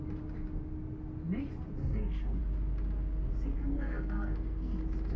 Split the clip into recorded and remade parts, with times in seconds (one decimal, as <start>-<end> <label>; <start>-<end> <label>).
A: 0.0-1.8 recorded; 1.8-2.4 remade; 2.4-3.5 recorded; 3.5-4.8 remade; 4.8-5.2 recorded